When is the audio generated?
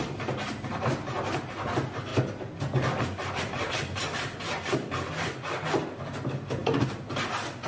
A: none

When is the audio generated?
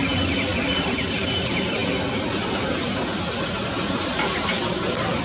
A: none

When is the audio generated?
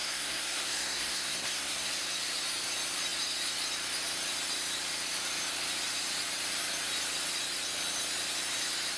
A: 0.0-1.9 (codec, SNAC)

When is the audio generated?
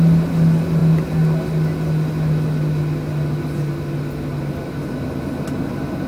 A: none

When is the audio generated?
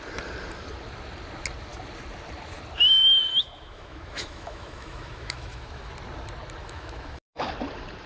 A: 3.3-5.9 (autoencoder, DAC-VAE); 6.6-7.5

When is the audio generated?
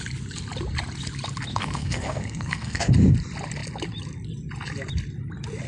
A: 1.5-2.9 (codec, SNAC)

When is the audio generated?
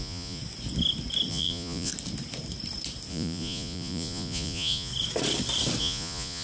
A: 0.0-0.4 (vocoder, Vocos); 1.3-1.9; 3.1-4.9; 5.8-6.4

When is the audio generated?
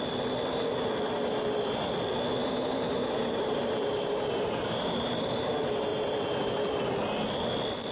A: 2.4-5.5 (vocoder, BigVGAN v2); 5.9-6.8